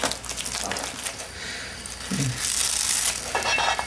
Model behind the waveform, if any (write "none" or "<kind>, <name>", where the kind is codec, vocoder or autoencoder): none